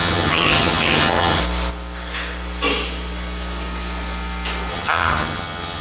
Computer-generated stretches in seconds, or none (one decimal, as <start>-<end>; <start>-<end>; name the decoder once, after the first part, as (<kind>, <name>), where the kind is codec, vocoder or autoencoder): 0.0-1.4 (vocoder, HiFi-GAN); 4.7-5.8